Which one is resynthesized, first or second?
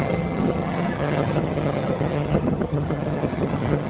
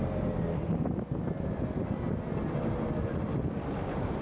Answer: first